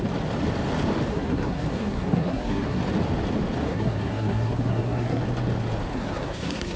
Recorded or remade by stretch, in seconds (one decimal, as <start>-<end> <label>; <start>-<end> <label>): 0.0-1.1 recorded; 1.1-2.8 remade; 2.8-3.6 recorded; 3.6-5.2 remade; 5.2-5.9 recorded; 5.9-6.8 remade